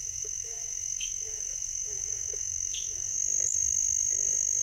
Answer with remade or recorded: remade